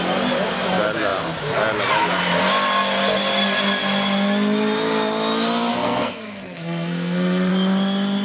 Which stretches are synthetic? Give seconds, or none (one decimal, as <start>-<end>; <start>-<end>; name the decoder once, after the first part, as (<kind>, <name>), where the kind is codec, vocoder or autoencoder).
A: 5.7-7.5 (codec, SNAC)